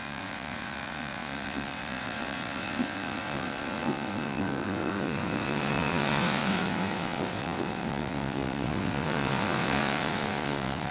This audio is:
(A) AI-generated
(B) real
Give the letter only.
A